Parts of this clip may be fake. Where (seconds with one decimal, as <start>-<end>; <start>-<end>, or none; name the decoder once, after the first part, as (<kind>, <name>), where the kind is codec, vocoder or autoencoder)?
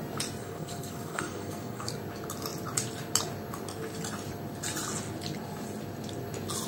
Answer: 0.4-1.9 (codec, SNAC)